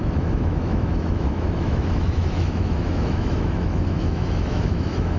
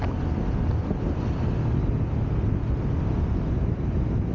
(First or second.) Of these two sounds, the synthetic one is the first